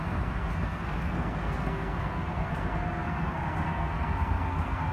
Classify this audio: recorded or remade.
remade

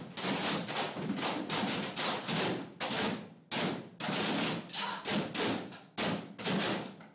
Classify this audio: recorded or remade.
recorded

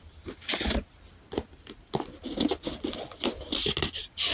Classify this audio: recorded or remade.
recorded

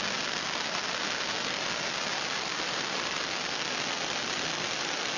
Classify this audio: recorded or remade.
recorded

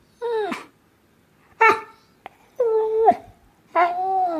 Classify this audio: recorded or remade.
recorded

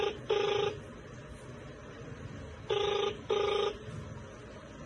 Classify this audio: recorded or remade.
recorded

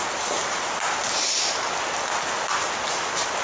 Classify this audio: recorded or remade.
recorded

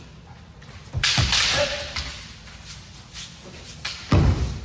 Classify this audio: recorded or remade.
recorded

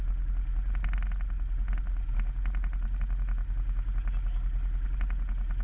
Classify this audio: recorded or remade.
recorded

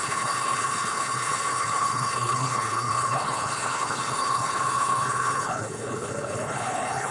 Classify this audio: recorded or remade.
remade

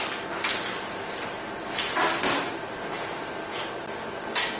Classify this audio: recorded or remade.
recorded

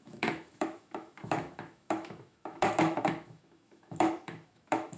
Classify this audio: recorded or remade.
remade